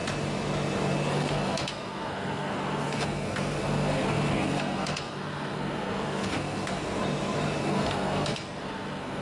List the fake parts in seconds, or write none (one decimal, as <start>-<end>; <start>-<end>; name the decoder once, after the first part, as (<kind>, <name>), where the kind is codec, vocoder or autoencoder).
1.1-7.0 (codec, SNAC); 7.6-9.2